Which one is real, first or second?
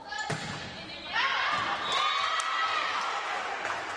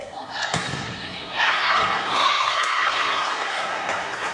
first